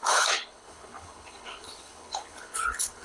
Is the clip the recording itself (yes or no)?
no